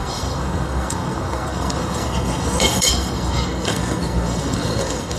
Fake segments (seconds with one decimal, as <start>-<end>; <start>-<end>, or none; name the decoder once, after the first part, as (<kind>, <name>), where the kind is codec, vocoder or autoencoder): 0.0-5.2 (codec, SNAC)